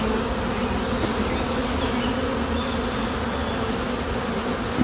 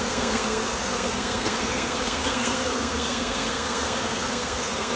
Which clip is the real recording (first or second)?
first